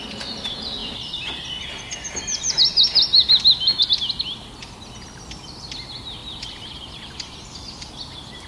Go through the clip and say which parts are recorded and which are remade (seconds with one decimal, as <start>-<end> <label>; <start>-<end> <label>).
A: 0.0-0.8 recorded; 0.8-4.1 remade; 4.1-6.2 recorded; 6.2-7.9 remade; 7.9-8.5 recorded